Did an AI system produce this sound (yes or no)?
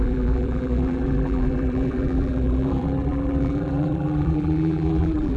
yes